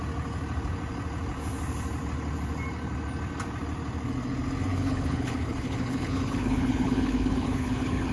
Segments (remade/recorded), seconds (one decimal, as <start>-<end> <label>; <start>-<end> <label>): 0.0-4.7 recorded; 4.7-8.1 remade